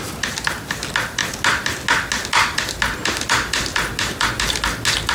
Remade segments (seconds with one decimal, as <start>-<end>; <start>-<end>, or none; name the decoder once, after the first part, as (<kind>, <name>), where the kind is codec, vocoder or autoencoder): none